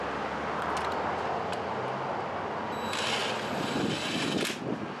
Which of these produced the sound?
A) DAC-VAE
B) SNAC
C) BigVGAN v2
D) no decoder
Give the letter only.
D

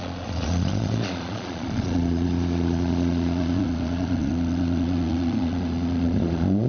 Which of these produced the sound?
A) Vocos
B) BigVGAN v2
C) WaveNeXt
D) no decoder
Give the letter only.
A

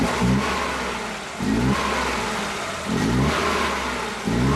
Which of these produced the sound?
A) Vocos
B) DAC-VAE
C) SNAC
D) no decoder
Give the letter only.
D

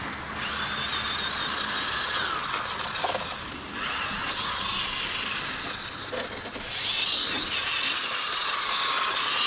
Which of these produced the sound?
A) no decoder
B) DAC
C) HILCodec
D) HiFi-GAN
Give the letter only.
A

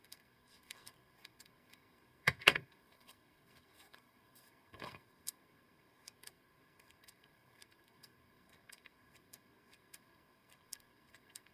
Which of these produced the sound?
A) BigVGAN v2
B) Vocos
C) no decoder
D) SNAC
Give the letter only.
D